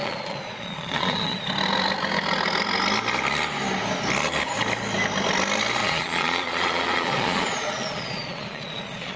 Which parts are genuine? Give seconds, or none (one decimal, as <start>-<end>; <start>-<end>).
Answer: 1.4-5.8